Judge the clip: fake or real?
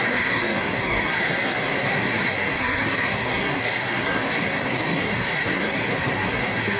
fake